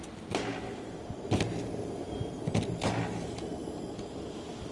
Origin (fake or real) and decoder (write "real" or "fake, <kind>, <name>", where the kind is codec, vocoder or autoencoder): real